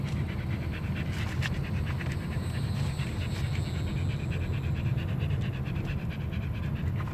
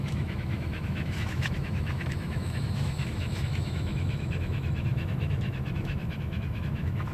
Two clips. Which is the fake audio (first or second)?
second